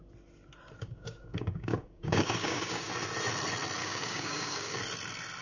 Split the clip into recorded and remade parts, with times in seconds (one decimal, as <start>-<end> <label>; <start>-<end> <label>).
0.0-0.8 recorded; 0.8-2.9 remade; 2.9-3.8 recorded; 3.8-4.8 remade; 4.8-5.4 recorded